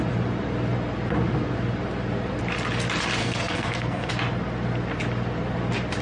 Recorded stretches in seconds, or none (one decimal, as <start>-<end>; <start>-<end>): 0.0-3.2; 4.1-6.0